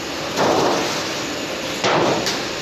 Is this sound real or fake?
real